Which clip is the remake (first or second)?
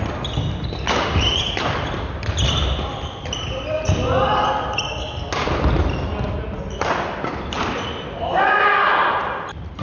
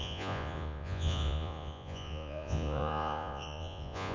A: second